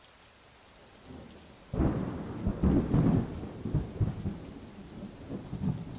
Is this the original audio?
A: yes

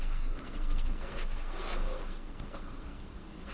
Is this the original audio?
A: no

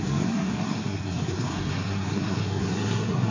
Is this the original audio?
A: no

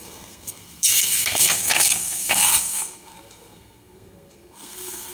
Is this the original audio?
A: no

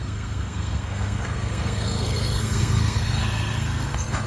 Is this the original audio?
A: no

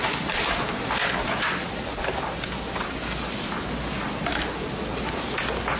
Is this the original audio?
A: yes